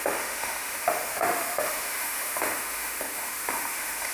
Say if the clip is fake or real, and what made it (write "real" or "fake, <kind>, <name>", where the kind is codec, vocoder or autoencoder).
fake, autoencoder, DAC-VAE